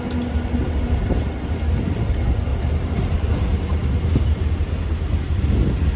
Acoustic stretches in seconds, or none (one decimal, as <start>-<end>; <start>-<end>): 0.0-2.5; 4.1-6.0